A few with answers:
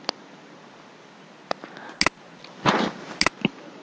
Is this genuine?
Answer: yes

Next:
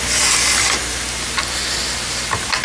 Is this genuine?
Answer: yes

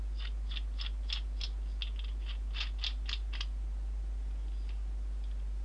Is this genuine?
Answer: yes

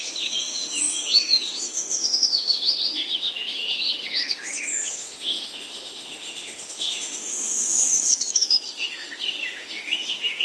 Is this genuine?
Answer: no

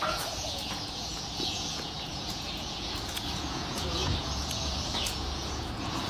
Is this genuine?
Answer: no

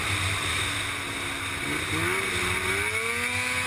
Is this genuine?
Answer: yes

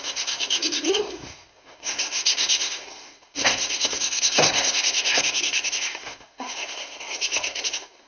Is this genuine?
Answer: no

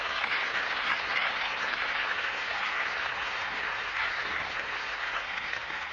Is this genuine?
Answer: no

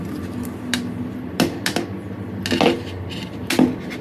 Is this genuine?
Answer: yes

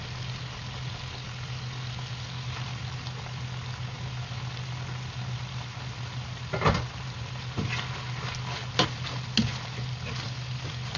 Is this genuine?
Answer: yes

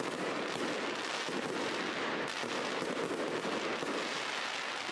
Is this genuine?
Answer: yes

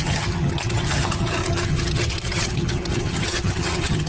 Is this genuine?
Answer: no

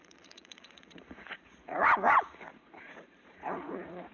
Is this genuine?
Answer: no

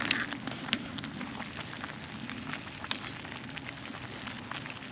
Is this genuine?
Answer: yes